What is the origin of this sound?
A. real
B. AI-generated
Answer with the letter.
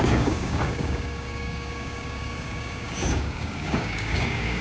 B